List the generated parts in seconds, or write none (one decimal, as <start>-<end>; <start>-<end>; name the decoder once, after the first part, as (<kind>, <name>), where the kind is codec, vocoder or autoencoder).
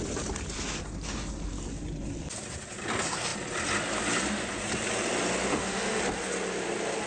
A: 5.5-6.0 (autoencoder, DAC-VAE)